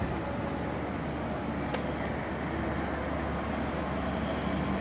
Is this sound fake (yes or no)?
no